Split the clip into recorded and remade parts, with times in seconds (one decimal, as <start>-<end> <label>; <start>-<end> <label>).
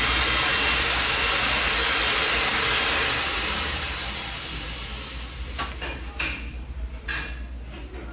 0.0-8.1 recorded